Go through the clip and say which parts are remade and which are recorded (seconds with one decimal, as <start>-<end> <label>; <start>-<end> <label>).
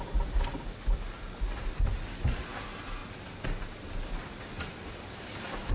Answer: 0.0-5.7 recorded